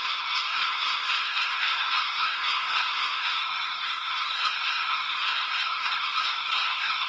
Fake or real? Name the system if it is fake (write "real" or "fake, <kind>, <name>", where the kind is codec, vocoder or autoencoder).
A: fake, codec, SNAC